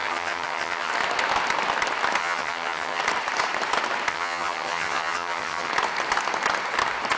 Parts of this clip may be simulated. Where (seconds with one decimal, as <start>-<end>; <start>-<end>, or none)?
0.0-0.9; 2.2-3.0; 4.1-5.7